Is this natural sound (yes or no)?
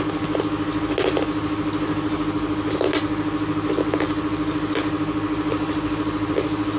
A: yes